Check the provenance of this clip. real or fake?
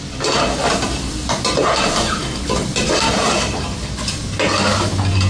real